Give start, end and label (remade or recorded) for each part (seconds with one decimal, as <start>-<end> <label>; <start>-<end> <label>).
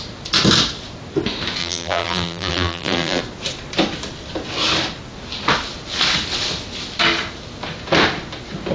0.0-1.6 recorded; 1.6-3.2 remade; 3.2-8.7 recorded